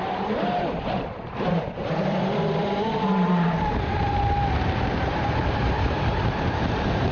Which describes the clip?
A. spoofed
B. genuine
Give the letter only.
A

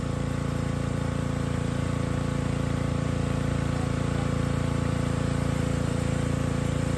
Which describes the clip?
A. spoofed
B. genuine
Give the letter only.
A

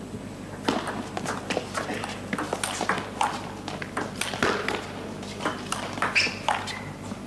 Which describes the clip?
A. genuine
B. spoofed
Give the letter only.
A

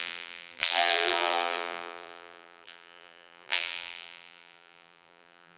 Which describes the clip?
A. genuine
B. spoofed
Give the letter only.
B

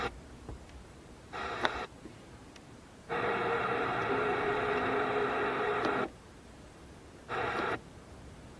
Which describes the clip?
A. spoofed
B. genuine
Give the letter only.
A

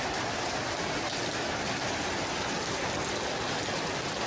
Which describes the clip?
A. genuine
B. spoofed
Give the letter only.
A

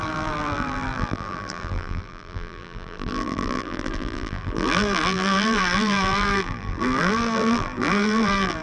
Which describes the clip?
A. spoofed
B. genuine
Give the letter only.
A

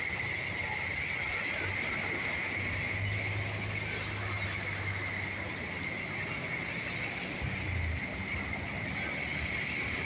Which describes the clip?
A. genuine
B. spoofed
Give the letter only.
A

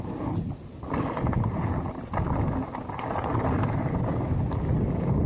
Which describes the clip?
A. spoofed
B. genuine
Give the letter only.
B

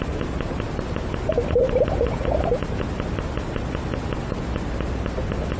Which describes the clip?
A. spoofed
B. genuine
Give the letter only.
B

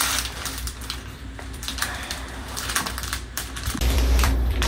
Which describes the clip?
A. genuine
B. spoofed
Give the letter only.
B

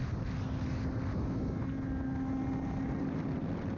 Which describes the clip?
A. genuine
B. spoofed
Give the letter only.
A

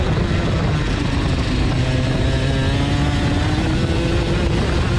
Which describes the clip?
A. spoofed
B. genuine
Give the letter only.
B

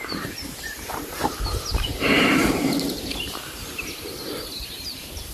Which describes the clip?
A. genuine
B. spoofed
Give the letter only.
B